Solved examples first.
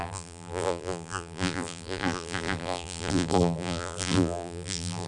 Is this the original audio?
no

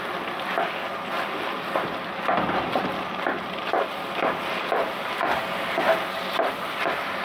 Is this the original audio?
yes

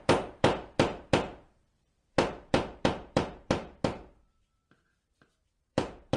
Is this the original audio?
no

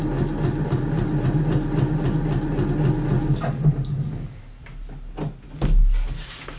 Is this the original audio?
yes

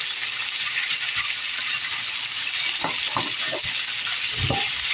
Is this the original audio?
yes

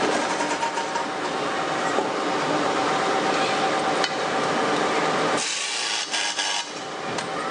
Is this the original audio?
yes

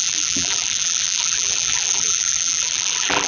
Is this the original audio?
no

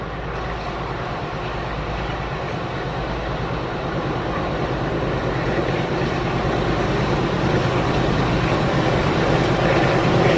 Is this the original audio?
yes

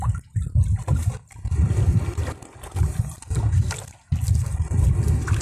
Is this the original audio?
yes